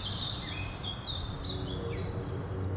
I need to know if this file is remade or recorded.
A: recorded